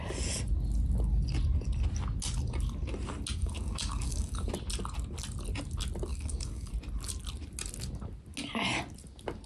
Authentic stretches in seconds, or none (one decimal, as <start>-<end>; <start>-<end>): 0.0-3.4; 4.5-6.1; 6.7-9.5